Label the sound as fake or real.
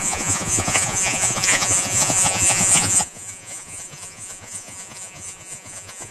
fake